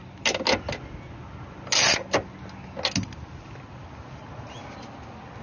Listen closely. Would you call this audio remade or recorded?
recorded